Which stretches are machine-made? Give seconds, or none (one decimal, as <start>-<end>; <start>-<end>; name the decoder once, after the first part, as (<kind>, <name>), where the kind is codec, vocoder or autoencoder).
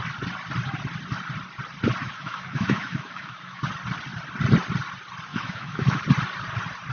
2.0-3.6 (autoencoder, DAC-VAE); 5.3-6.0